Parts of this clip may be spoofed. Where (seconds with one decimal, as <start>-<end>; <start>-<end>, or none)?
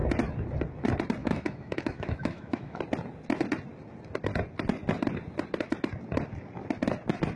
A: 1.2-2.8